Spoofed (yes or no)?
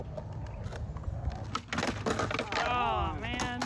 no